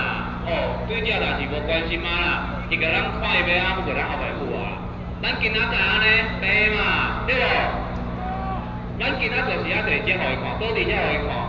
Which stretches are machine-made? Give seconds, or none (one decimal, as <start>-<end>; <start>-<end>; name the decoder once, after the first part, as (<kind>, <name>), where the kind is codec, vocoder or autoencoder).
none